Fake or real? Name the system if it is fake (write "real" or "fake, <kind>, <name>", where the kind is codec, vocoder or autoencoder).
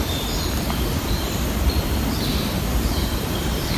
fake, vocoder, BigVGAN v2